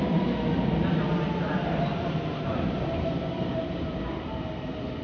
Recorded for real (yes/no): yes